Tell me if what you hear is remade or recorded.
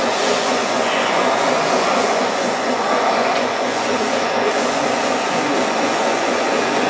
remade